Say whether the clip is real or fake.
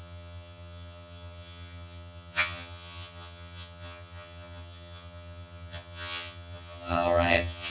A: fake